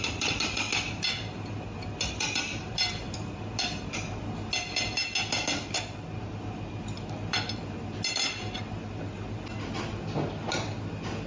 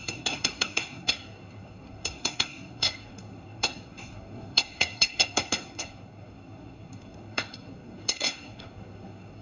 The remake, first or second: second